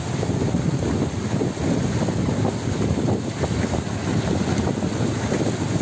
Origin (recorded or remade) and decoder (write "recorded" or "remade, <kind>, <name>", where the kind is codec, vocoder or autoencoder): recorded